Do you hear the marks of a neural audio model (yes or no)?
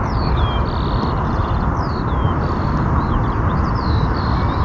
no